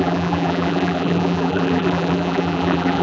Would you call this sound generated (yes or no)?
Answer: yes